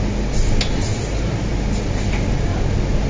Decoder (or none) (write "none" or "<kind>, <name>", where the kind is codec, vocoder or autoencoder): none